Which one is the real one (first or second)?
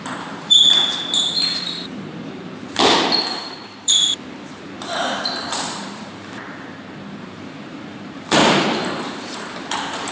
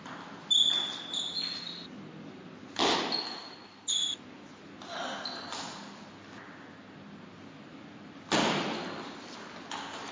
second